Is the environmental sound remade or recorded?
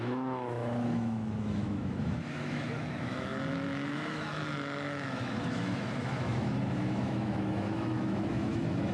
remade